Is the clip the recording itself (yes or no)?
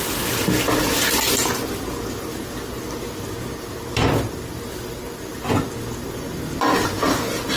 yes